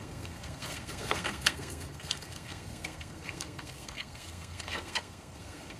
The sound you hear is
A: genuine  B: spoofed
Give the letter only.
B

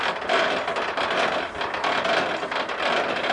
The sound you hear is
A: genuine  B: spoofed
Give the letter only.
A